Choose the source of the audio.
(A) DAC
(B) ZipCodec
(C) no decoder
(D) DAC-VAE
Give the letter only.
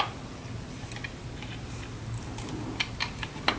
C